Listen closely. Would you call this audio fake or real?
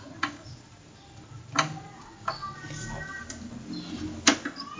real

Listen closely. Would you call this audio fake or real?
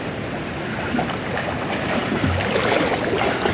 real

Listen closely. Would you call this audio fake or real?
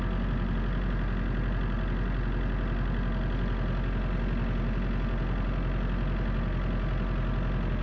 real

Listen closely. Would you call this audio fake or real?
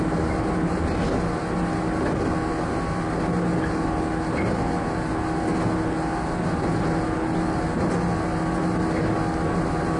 real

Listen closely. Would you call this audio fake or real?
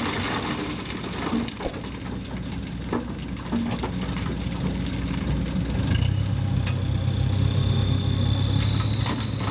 real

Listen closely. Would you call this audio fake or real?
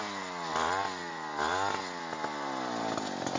real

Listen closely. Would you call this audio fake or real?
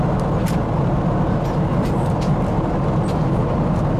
real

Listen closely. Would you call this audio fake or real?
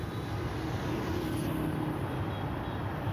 real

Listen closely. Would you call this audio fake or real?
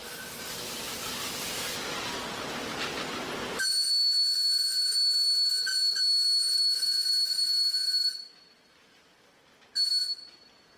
real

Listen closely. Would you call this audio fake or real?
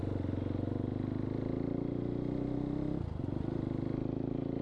real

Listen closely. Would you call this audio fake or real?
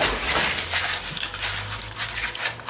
real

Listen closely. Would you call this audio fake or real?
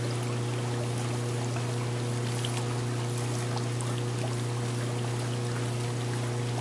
real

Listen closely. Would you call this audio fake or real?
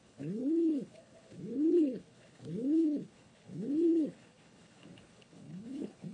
fake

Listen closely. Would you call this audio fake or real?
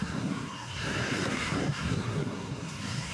fake